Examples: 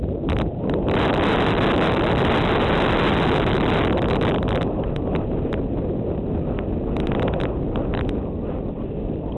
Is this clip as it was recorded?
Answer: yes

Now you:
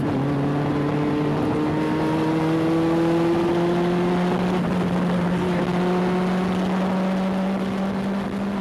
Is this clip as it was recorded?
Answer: yes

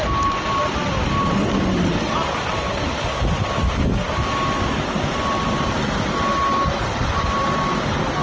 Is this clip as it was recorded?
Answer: yes